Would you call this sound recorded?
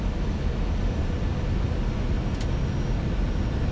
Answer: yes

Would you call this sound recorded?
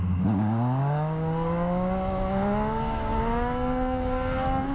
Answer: no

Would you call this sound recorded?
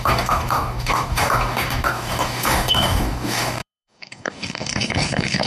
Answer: no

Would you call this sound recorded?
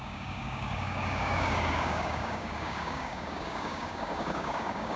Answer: no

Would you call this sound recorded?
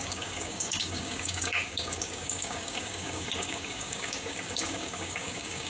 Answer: no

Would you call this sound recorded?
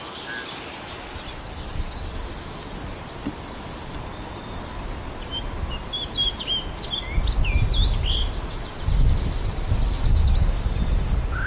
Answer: yes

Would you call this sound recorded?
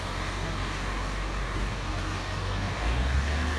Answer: no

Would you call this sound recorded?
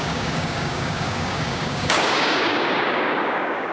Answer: no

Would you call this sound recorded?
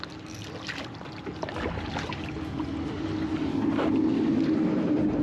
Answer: yes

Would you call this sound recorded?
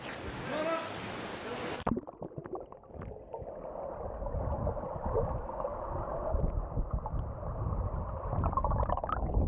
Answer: yes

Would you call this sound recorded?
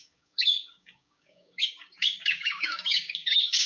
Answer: no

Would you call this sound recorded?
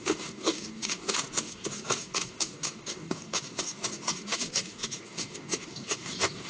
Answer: no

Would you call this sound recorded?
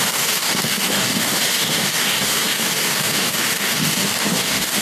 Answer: no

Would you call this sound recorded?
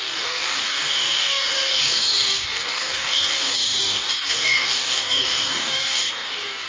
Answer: no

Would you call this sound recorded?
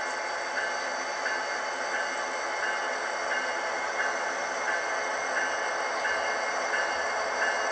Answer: yes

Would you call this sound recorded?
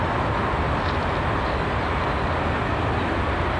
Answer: yes